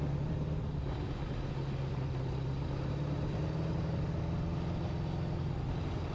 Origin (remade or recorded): recorded